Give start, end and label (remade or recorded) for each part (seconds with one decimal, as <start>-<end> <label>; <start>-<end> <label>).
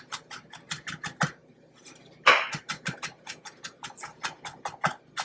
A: 0.0-5.2 recorded